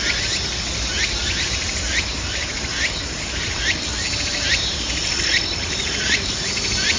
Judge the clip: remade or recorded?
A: recorded